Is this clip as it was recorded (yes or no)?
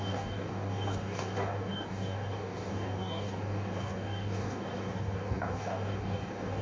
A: no